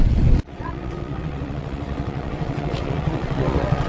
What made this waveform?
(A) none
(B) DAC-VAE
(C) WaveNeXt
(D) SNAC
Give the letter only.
C